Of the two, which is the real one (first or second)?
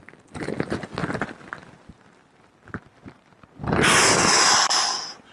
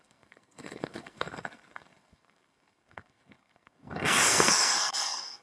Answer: first